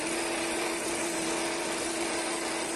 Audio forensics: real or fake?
real